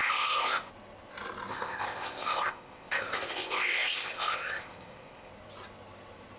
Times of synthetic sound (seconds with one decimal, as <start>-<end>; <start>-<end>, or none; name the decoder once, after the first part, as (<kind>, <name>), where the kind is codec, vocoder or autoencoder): 0.0-0.7 (codec, ZipCodec); 1.5-5.3